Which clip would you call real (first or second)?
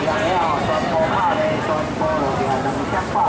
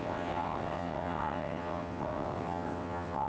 first